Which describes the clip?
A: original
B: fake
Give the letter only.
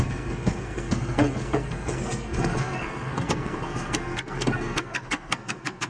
B